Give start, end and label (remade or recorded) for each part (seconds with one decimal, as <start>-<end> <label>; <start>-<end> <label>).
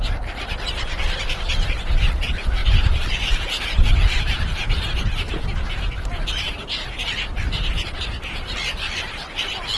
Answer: 0.0-9.8 recorded